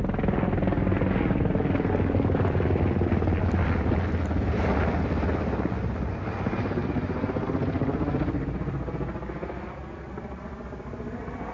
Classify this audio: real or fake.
real